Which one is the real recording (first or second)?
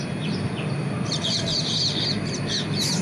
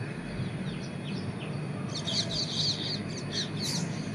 second